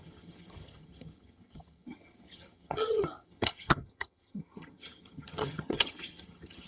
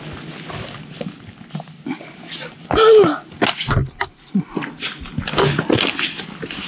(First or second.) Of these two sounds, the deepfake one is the first